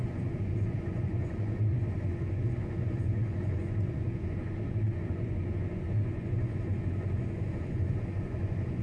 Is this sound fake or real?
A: fake